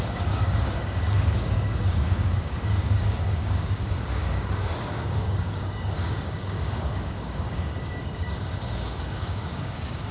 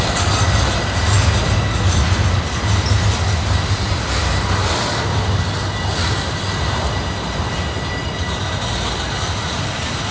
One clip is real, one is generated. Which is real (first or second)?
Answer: second